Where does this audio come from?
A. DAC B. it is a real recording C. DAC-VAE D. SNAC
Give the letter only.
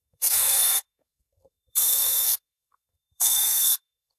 D